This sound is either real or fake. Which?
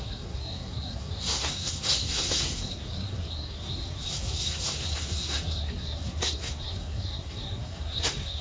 fake